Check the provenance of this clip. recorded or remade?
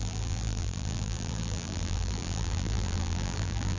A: remade